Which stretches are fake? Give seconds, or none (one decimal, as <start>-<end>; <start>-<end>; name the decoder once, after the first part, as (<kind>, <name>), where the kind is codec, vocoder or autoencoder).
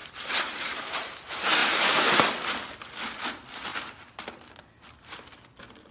0.0-0.9 (vocoder, BigVGAN v2); 1.6-2.3